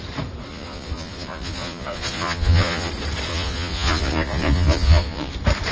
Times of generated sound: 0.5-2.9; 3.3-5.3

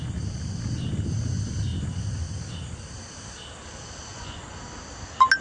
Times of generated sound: 4.1-4.6

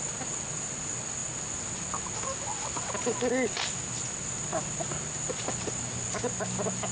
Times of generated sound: none

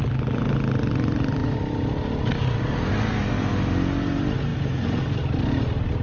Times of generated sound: 4.5-5.0

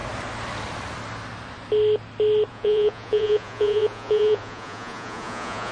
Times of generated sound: 2.5-5.7

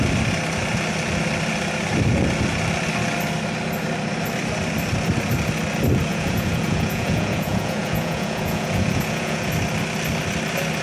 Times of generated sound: 6.1-9.5

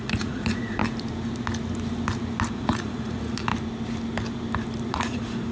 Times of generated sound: 0.0-0.8; 2.5-3.5; 4.9-5.5

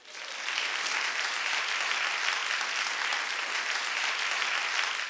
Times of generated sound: none